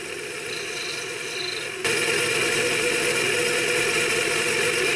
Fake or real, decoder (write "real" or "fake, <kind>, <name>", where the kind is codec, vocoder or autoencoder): real